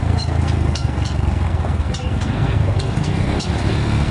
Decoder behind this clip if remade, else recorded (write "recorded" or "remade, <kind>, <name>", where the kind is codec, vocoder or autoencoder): remade, codec, SNAC